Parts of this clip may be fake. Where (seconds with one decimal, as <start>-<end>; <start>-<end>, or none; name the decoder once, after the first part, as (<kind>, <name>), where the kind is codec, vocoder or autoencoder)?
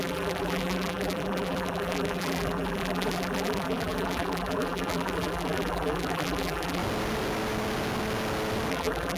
0.0-6.8 (vocoder, BigVGAN v2); 8.7-9.2